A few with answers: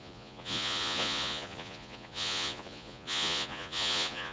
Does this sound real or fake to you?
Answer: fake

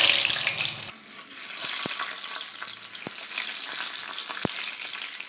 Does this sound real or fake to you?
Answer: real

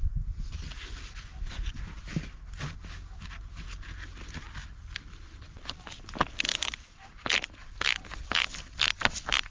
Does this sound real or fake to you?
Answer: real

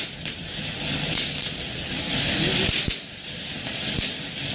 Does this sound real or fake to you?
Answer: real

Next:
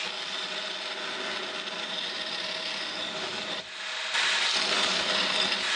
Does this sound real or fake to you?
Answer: real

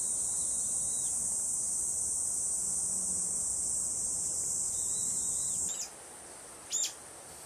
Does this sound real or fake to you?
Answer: real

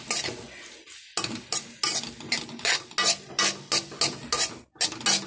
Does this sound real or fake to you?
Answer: real